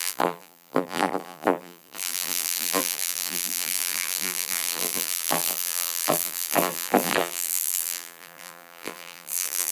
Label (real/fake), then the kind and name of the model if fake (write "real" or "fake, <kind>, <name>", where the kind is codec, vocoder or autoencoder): fake, vocoder, BigVGAN v2